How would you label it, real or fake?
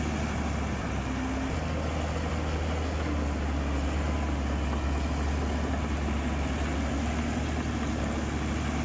real